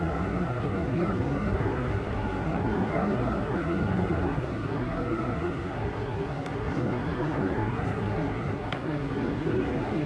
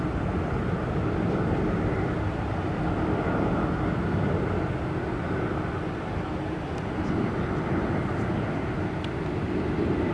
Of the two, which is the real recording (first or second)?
second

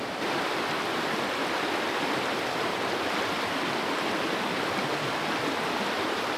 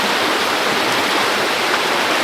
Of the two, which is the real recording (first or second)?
second